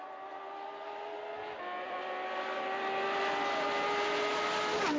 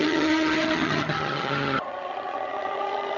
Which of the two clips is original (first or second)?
first